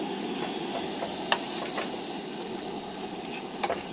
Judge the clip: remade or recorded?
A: recorded